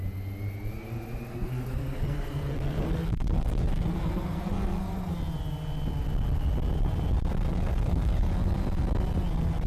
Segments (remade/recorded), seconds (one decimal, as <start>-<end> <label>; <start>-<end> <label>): 0.0-1.3 recorded; 1.3-5.1 remade; 5.1-7.5 recorded; 7.5-8.3 remade; 8.3-9.7 recorded